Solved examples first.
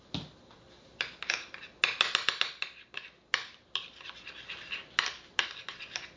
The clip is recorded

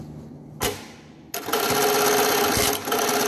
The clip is recorded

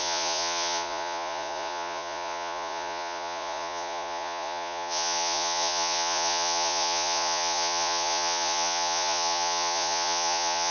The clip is remade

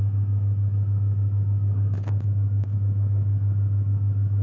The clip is remade